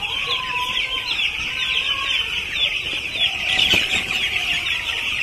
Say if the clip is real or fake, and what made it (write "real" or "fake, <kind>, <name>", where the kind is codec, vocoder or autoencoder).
fake, vocoder, BigVGAN v2